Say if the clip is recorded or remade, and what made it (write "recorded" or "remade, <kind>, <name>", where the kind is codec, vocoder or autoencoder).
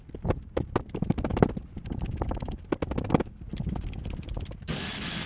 recorded